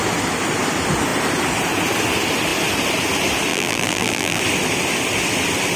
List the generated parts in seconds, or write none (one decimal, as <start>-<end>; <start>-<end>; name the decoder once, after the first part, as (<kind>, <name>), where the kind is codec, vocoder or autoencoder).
3.5-4.4 (vocoder, BigVGAN v2)

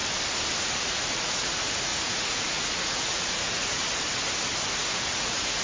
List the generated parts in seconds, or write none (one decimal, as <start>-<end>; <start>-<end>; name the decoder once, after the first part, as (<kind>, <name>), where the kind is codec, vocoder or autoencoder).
0.6-3.8 (vocoder, Vocos); 4.8-5.6